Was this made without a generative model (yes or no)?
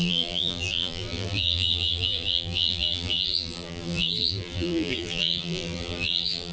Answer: no